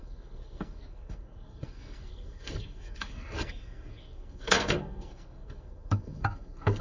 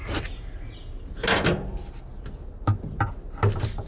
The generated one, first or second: first